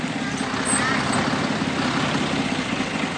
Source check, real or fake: real